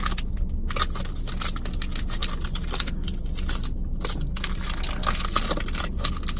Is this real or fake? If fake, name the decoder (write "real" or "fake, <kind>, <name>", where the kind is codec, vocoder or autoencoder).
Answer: real